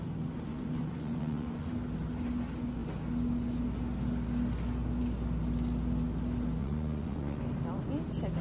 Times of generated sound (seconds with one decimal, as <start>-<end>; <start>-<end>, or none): 0.5-1.7; 6.6-7.4

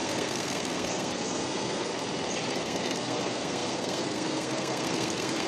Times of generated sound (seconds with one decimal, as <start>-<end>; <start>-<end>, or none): 0.0-1.9; 2.5-5.5

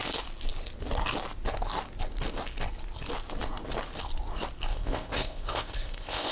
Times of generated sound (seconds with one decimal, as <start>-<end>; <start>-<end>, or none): 4.7-6.3